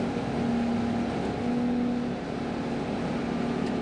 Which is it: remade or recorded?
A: recorded